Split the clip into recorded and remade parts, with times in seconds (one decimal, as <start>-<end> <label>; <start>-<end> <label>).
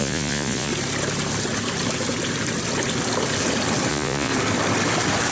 0.0-0.7 remade; 0.7-3.9 recorded; 3.9-4.3 remade; 4.3-5.3 recorded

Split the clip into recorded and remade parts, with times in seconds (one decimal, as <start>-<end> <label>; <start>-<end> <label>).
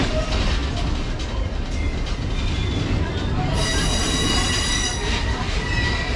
0.0-6.2 recorded